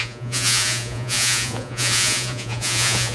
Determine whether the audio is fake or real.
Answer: fake